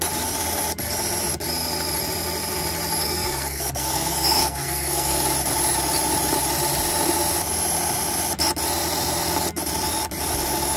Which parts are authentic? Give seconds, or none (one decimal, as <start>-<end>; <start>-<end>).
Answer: 0.0-3.0; 5.2-10.8